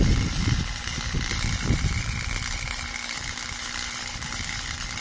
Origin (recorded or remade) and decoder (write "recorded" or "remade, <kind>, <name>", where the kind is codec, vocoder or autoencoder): recorded